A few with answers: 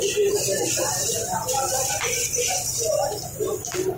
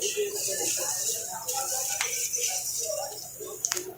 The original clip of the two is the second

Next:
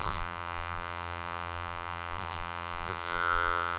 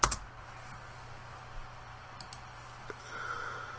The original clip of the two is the second